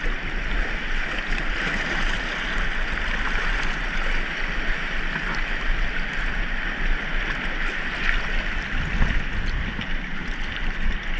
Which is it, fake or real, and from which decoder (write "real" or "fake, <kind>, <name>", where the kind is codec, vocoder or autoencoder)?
real